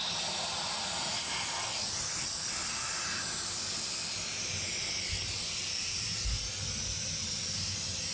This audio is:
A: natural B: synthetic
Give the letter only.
A